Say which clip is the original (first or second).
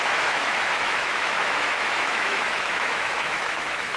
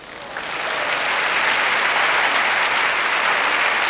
second